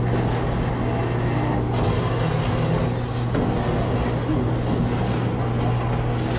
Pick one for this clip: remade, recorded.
recorded